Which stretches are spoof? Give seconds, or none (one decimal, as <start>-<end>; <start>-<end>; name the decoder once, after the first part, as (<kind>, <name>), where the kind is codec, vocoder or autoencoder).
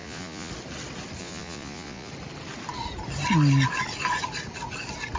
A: 0.0-0.5 (vocoder, Vocos); 1.2-2.1